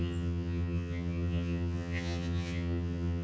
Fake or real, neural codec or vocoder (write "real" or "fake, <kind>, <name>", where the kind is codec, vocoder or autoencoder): fake, vocoder, HiFi-GAN